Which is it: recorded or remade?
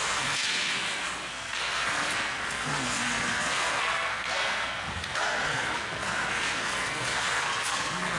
remade